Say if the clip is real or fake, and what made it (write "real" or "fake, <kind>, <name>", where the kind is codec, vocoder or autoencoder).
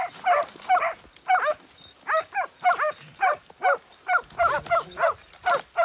real